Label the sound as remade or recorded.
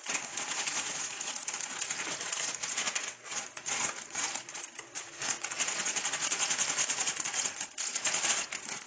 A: remade